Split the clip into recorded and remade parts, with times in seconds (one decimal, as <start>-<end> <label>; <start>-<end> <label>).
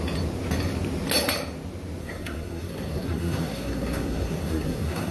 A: 0.0-2.0 recorded; 2.0-5.1 remade